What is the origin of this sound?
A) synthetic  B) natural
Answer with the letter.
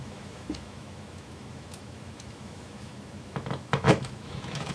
A